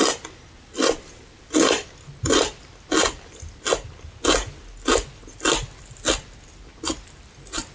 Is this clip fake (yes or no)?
no